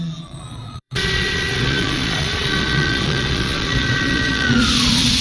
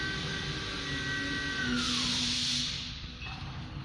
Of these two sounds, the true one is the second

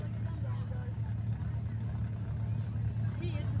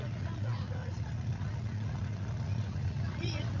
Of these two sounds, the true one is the first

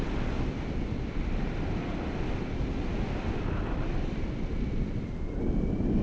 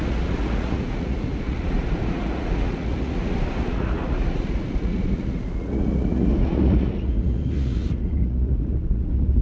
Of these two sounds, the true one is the first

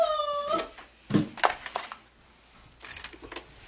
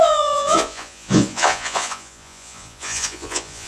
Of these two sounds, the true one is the first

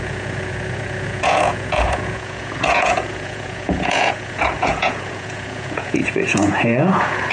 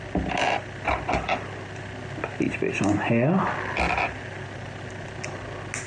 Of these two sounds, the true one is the second